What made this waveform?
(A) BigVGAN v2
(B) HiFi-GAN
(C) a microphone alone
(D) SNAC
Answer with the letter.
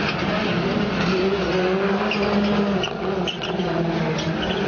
C